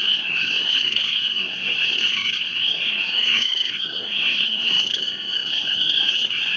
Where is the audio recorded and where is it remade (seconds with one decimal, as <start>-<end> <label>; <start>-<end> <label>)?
0.0-6.6 remade